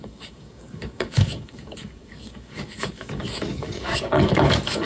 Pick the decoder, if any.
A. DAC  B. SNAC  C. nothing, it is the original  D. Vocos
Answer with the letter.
A